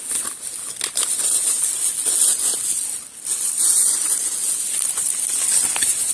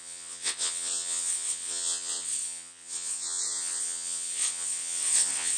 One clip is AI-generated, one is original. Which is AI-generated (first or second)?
second